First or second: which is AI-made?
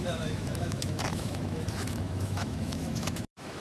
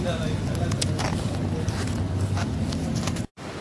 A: first